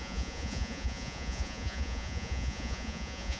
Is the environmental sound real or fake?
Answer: fake